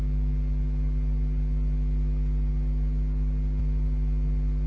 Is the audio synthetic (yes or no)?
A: no